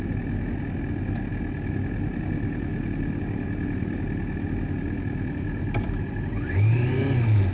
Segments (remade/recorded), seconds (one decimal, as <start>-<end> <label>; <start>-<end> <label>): 0.0-7.5 recorded